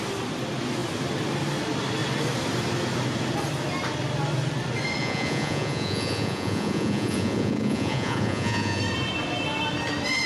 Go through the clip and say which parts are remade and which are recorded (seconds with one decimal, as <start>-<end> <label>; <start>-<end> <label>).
0.0-5.0 recorded; 5.0-8.8 remade; 8.8-10.3 recorded